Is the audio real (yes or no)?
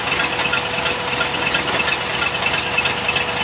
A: yes